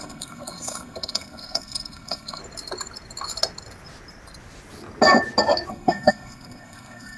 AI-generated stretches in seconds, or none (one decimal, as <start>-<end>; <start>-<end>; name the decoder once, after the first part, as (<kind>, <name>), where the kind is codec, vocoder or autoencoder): 0.0-2.4 (codec, SNAC); 5.7-7.2